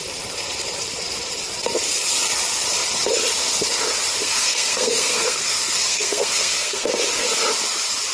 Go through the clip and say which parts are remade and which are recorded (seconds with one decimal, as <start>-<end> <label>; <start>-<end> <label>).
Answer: 0.0-4.2 recorded; 4.2-6.9 remade; 6.9-8.1 recorded